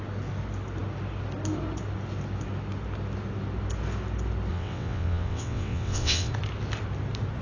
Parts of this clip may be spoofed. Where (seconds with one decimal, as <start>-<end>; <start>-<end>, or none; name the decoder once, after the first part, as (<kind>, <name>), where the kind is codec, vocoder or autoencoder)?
4.5-6.3 (vocoder, WaveNeXt)